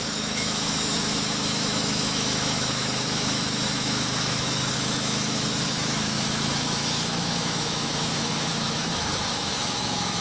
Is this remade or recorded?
remade